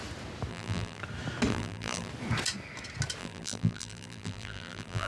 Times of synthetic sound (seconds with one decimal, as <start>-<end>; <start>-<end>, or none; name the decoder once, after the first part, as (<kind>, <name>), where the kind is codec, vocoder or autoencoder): 0.5-1.0 (vocoder, BigVGAN v2); 1.5-2.1; 3.2-5.1